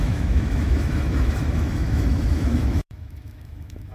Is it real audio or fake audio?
fake